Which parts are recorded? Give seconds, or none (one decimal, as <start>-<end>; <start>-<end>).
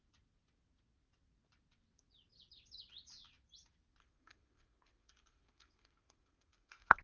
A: 0.0-4.0